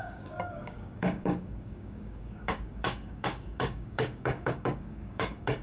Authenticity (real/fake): fake